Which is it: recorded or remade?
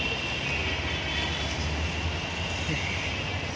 recorded